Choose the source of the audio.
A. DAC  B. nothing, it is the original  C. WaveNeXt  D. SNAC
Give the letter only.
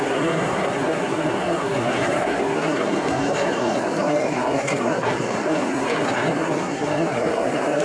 D